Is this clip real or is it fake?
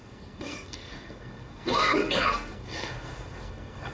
fake